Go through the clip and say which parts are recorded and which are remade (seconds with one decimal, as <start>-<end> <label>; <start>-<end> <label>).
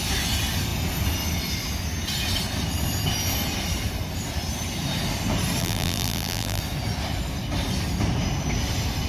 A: 0.0-5.6 recorded; 5.6-6.6 remade; 6.6-9.1 recorded